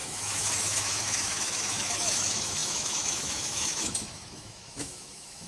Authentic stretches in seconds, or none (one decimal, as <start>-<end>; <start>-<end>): none